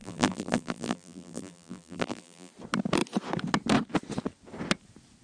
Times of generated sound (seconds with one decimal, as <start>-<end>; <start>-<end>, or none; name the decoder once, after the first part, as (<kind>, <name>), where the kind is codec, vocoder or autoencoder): 0.0-2.5 (vocoder, BigVGAN v2)